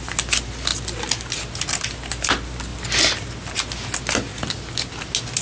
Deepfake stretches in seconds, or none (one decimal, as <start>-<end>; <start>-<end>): none